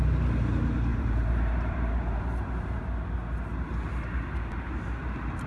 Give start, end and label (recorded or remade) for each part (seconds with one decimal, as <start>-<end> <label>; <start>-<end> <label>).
0.0-0.9 recorded; 0.9-2.8 remade; 2.8-5.5 recorded